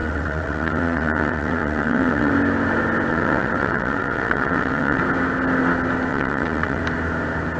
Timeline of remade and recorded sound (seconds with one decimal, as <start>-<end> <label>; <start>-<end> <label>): 0.0-2.3 remade; 2.3-3.1 recorded; 3.1-5.0 remade; 5.0-6.1 recorded; 6.1-6.8 remade; 6.8-7.6 recorded